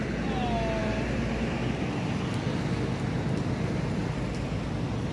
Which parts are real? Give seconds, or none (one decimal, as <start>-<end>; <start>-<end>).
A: 0.0-0.8; 1.6-5.1